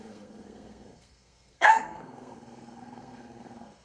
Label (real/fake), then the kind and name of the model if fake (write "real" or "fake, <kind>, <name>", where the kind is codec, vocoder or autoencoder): fake, codec, SNAC